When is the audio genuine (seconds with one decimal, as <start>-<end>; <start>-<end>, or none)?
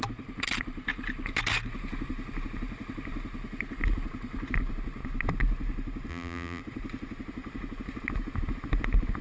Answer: 0.0-6.1; 6.6-9.2